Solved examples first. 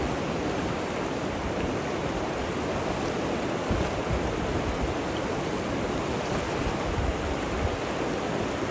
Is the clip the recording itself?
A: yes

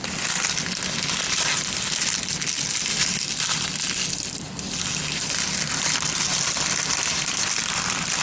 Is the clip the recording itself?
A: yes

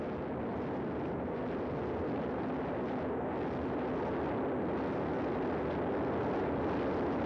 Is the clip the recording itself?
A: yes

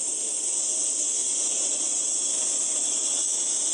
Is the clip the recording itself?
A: yes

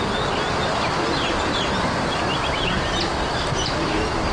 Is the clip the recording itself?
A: yes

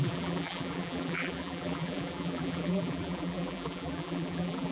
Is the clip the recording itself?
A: no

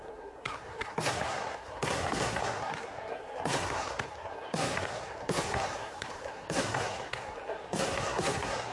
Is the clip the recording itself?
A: no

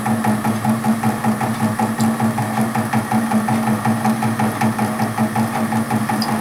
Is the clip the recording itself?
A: yes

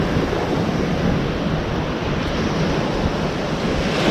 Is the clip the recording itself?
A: yes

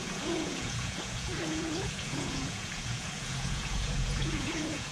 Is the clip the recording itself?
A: no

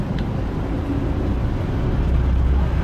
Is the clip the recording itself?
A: yes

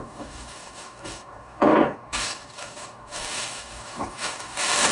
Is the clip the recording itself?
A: no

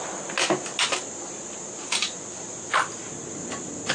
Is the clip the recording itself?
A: yes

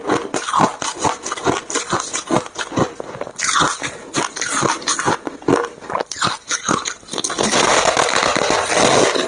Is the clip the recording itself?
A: yes